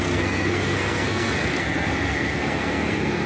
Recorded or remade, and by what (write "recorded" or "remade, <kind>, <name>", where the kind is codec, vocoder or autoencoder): remade, codec, SNAC